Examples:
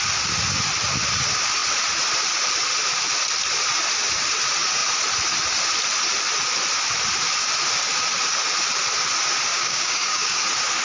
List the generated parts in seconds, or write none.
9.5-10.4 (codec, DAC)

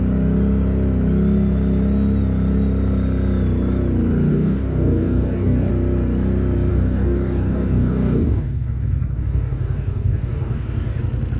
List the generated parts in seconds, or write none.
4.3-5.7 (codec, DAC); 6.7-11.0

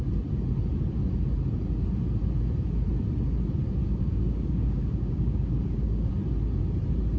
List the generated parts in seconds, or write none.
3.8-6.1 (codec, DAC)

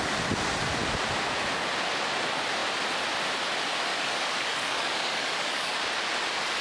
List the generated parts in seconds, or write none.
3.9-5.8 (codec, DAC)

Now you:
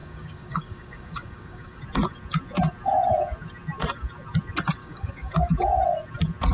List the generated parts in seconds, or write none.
0.0-1.8 (codec, DAC); 4.8-5.5